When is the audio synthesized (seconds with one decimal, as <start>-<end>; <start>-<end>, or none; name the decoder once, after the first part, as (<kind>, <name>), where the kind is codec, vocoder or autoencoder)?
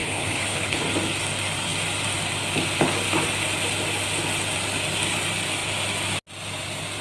0.0-0.8 (codec, HILCodec)